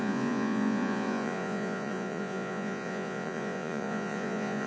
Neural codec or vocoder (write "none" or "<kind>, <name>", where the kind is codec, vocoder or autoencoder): vocoder, Vocos